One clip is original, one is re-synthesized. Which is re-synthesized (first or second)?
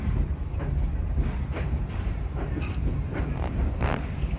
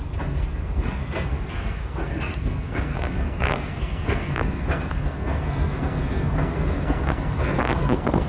second